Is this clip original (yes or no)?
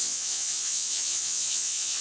no